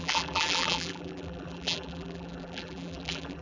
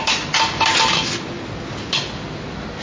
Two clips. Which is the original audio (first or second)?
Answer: second